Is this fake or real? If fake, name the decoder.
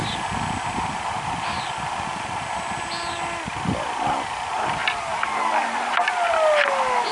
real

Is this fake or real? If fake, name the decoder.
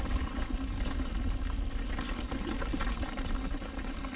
real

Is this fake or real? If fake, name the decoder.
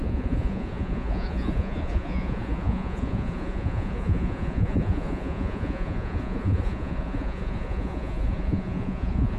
fake, vocoder, Vocos